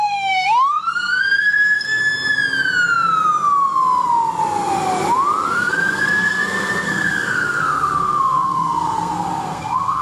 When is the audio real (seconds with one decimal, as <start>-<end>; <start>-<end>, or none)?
2.0-5.5